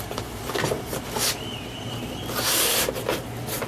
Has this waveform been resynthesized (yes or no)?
no